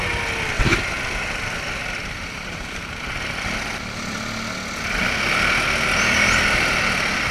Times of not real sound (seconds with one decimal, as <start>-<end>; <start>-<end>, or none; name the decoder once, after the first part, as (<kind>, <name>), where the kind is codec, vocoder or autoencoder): none